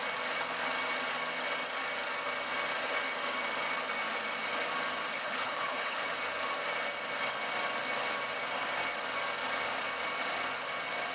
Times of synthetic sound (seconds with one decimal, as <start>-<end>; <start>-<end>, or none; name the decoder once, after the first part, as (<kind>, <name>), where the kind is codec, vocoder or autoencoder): 5.1-6.1 (codec, HILCodec)